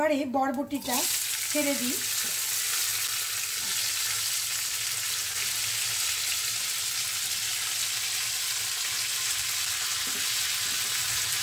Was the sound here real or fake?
real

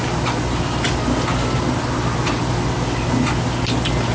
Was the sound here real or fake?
real